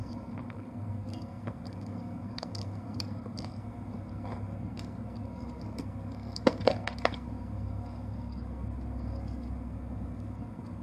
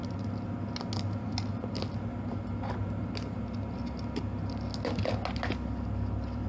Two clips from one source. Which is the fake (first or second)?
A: first